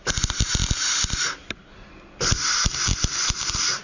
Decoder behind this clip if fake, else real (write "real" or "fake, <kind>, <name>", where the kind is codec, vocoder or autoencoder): real